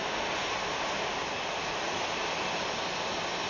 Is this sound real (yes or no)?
yes